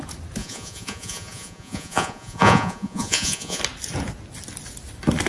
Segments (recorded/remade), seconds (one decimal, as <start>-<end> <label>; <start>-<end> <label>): 0.0-0.4 recorded; 0.4-3.6 remade; 3.6-5.3 recorded